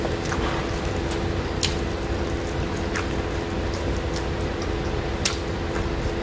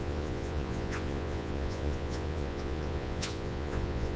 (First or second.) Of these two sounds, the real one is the first